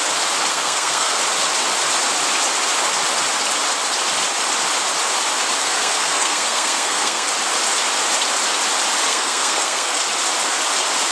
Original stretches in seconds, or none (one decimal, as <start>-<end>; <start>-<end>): 0.0-0.5; 1.2-5.6; 7.3-9.1; 10.0-11.1

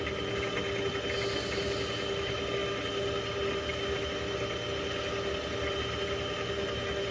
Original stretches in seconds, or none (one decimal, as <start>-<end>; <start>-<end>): 0.0-7.1